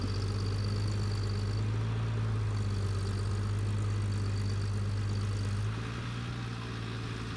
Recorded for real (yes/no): yes